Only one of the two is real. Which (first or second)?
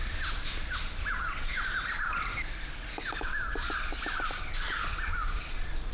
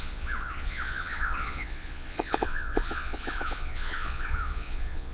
first